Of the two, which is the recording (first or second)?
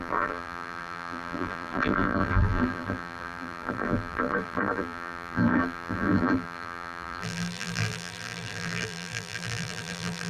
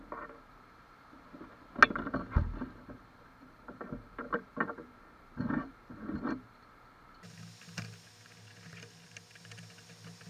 second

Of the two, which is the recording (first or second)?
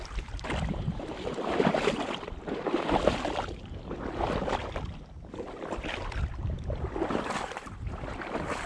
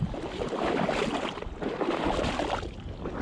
second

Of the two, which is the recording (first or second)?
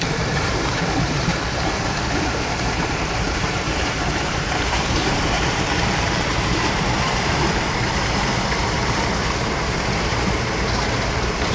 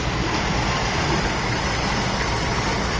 second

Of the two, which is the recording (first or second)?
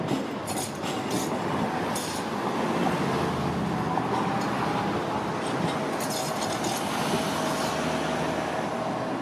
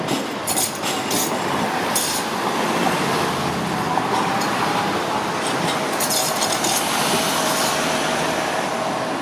first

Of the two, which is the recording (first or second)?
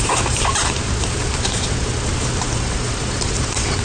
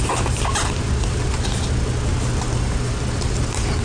second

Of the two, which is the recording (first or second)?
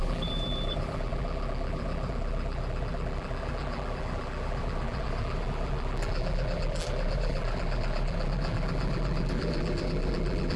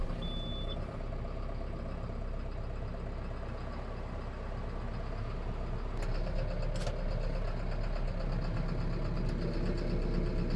second